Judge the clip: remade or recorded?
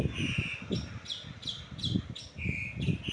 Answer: recorded